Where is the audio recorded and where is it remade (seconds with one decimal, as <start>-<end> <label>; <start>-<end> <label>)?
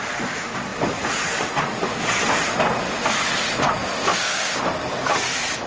0.0-4.1 recorded; 4.1-4.6 remade; 4.6-5.7 recorded